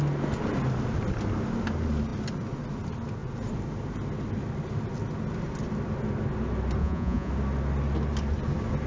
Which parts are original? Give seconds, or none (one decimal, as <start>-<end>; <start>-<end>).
0.0-6.8; 7.3-8.9